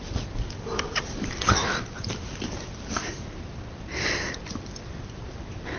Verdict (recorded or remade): remade